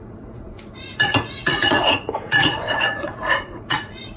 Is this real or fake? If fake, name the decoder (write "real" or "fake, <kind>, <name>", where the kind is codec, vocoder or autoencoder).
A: fake, vocoder, Vocos